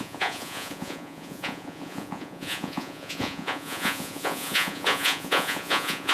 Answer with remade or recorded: remade